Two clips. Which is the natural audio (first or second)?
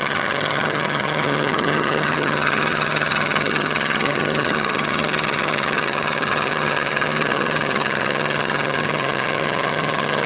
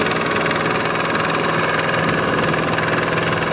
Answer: second